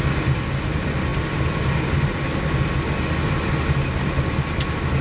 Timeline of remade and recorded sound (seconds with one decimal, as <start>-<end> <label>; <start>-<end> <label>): 0.0-5.0 recorded